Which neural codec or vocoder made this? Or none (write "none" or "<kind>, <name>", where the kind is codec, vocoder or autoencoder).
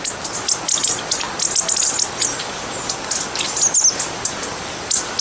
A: none